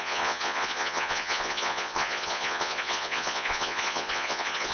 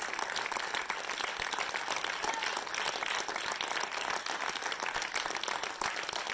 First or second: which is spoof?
first